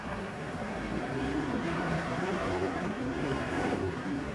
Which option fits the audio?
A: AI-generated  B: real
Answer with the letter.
A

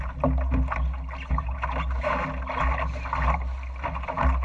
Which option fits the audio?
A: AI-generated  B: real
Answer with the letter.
B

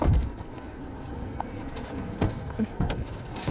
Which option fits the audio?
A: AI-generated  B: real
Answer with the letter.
A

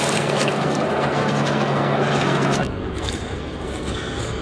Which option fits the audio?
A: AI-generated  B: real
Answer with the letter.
A